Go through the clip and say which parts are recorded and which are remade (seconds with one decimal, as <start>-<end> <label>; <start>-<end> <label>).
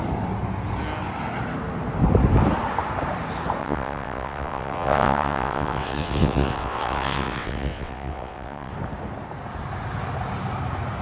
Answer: 0.0-3.6 recorded; 3.6-8.7 remade; 8.7-11.0 recorded